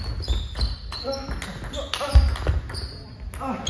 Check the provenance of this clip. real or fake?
real